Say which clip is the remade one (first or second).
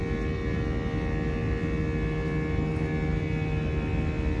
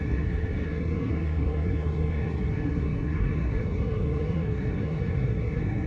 second